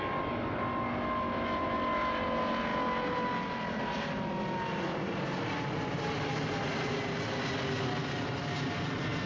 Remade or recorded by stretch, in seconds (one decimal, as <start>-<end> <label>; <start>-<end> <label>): 0.0-4.9 recorded; 4.9-5.6 remade; 5.6-9.3 recorded